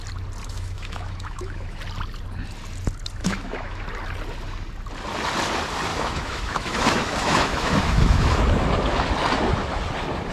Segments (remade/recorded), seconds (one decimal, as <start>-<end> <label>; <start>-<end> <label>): 0.0-0.4 recorded; 0.4-1.8 remade; 1.8-3.2 recorded; 3.2-3.8 remade; 3.8-5.9 recorded; 5.9-8.4 remade; 8.4-10.3 recorded